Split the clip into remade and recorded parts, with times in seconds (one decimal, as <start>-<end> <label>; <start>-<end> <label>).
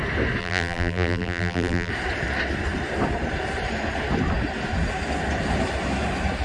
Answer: 0.0-0.4 recorded; 0.4-1.9 remade; 1.9-6.4 recorded